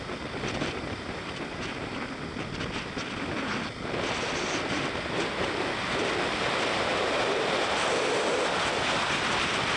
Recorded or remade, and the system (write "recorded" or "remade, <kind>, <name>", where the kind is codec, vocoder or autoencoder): recorded